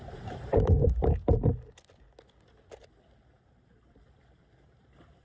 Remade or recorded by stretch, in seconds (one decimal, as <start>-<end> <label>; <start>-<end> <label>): 0.0-1.3 remade; 1.3-3.4 recorded; 3.4-5.2 remade